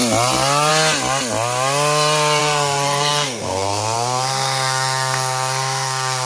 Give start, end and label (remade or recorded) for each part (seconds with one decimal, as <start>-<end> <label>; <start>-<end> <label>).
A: 0.0-2.4 recorded; 2.4-6.3 remade